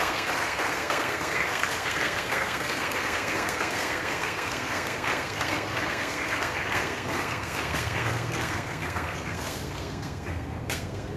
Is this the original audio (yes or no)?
no